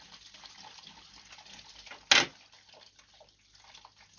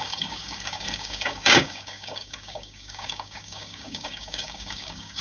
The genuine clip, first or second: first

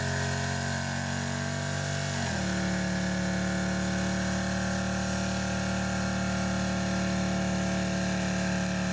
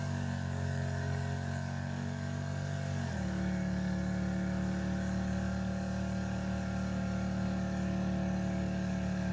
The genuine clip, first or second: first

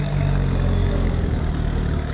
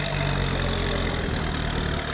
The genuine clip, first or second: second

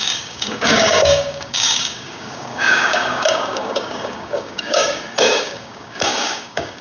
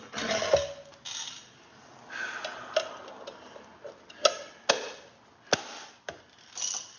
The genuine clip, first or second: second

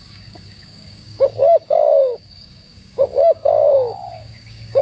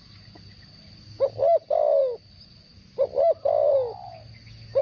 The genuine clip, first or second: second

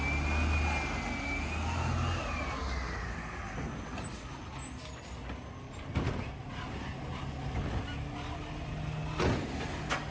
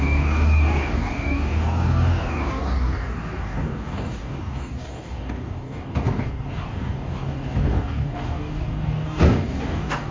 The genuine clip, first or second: first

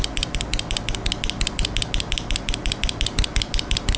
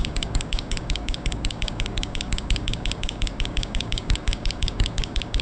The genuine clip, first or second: first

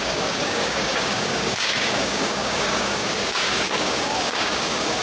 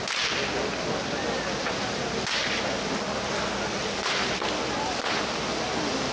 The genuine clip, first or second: second